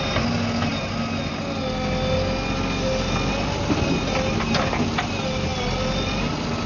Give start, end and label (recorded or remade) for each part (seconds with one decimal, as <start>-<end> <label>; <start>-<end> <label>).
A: 0.0-6.7 recorded